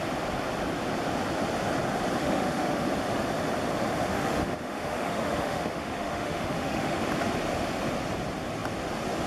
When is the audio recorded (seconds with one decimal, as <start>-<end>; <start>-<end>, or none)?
0.0-2.2; 2.9-4.1; 7.0-9.3